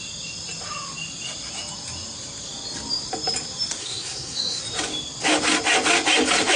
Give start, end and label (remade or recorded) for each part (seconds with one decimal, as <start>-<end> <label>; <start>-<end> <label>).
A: 0.0-3.8 recorded; 3.8-4.6 remade; 4.6-6.6 recorded